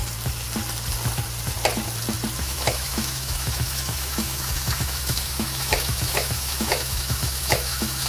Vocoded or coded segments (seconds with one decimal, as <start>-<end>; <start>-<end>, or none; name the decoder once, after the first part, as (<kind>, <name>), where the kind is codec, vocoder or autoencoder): 2.4-8.1 (autoencoder, DAC-VAE)